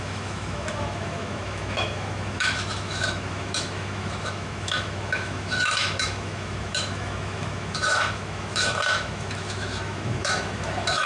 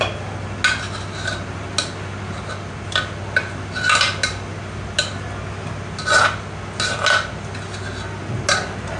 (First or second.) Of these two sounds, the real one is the second